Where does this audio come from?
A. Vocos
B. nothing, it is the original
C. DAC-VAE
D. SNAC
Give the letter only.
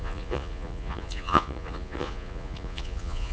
A